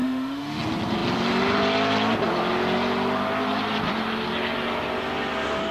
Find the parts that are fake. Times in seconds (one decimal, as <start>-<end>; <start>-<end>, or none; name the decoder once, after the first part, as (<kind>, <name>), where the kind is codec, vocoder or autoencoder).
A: 0.0-0.6 (autoencoder, DAC-VAE)